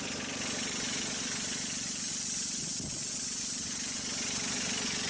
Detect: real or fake real